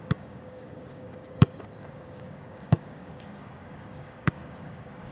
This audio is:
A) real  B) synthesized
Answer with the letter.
B